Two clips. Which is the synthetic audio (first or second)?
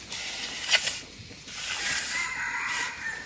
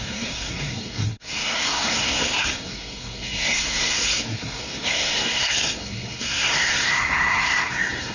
second